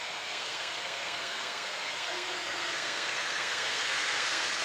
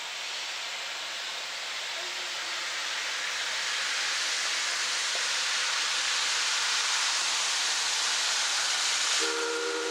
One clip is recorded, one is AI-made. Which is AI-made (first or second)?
first